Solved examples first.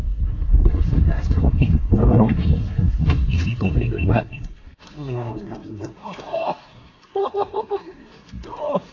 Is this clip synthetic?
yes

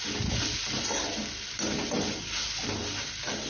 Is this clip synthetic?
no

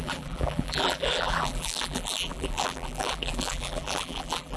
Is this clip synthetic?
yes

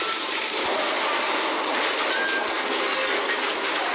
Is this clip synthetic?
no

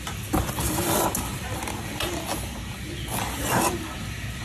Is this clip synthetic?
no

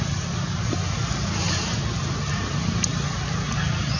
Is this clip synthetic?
no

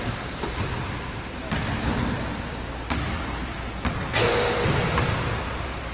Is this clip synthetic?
yes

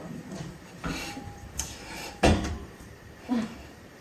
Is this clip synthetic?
yes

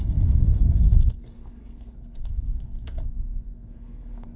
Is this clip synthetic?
yes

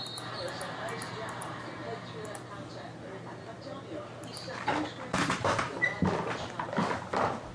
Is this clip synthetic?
no